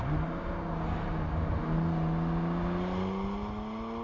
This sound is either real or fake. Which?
real